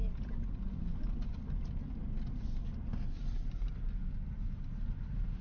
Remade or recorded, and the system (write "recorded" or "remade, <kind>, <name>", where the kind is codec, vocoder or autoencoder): recorded